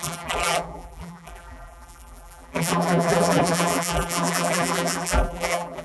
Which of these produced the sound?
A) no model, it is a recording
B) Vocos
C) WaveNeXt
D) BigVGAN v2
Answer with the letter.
D